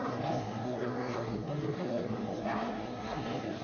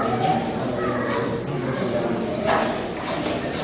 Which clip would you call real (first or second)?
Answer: second